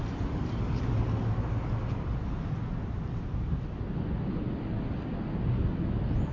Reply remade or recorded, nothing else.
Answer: recorded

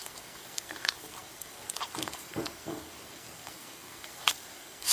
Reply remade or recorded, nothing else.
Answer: remade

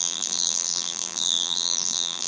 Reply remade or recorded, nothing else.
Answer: remade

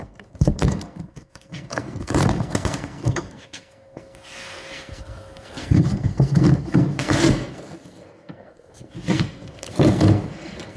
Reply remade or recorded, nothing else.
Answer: remade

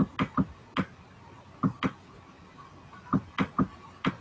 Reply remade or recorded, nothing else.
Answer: recorded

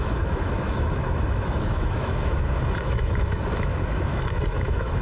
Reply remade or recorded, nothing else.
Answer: remade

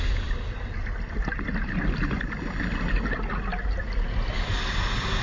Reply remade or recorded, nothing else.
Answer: recorded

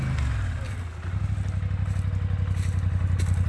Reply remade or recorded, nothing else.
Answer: recorded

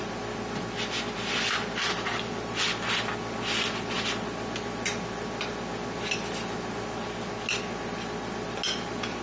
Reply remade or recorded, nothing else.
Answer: recorded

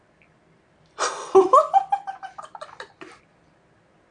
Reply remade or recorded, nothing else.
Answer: recorded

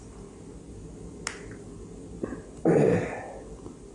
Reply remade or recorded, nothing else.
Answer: recorded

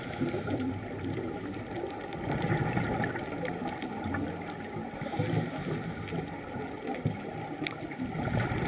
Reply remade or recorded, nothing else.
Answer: recorded